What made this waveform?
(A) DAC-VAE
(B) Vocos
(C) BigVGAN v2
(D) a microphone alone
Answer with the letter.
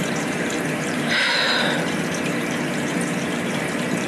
C